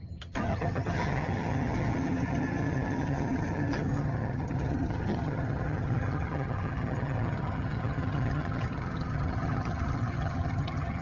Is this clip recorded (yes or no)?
no